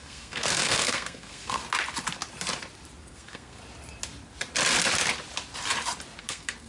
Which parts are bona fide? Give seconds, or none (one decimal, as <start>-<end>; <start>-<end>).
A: 1.6-3.0; 3.6-6.2